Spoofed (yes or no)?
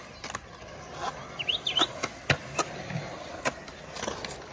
no